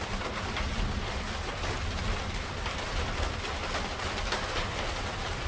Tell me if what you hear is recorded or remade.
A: recorded